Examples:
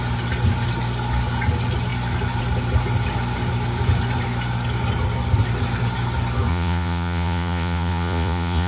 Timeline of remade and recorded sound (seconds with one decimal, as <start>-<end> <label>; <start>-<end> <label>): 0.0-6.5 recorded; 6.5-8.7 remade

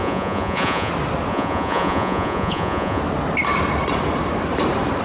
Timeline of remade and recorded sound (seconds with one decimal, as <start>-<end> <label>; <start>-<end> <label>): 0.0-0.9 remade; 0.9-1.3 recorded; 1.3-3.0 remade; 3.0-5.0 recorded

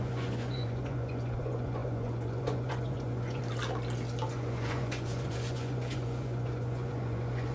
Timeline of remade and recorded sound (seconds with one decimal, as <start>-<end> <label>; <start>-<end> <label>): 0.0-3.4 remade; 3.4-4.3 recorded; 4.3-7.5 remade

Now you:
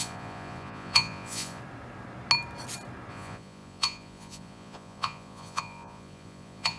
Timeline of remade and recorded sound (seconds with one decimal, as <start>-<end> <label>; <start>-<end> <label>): 0.0-1.6 remade; 1.6-3.1 recorded; 3.1-6.8 remade

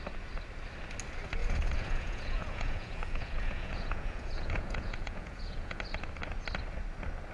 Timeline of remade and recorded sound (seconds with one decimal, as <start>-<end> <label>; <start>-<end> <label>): 0.0-1.4 recorded; 1.4-5.8 remade; 5.8-7.3 recorded